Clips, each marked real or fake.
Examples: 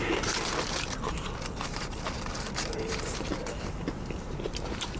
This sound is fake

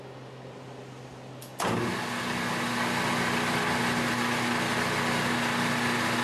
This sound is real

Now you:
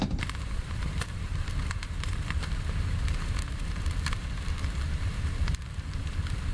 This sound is fake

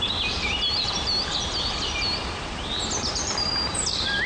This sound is fake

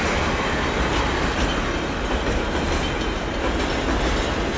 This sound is real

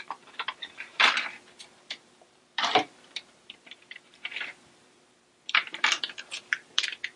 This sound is fake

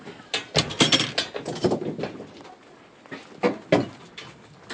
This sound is real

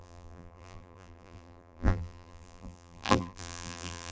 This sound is fake